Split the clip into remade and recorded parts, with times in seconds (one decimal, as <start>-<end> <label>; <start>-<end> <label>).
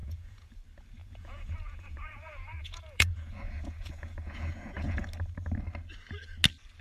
0.0-0.5 remade; 0.5-1.0 recorded; 1.0-5.1 remade; 5.1-6.8 recorded